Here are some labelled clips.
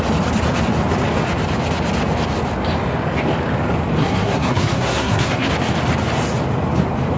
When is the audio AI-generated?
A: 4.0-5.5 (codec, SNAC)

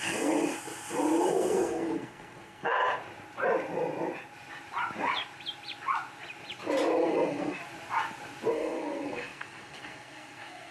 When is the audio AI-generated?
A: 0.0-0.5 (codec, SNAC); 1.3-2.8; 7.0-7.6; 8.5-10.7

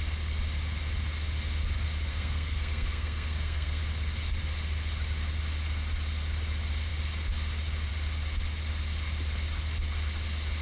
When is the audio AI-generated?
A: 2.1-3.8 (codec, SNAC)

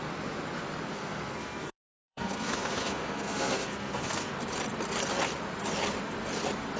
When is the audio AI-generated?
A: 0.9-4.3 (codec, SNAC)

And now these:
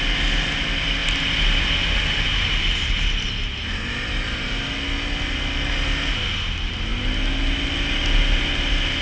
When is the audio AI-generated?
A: none

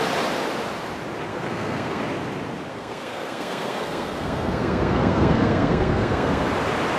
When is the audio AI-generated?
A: 1.3-2.0 (codec, SNAC); 2.7-6.5